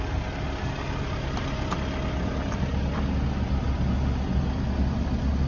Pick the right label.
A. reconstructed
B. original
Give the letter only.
B